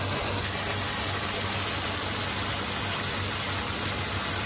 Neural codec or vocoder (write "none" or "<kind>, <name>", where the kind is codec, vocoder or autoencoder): none